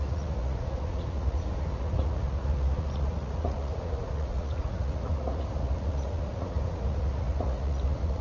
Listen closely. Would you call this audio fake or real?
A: fake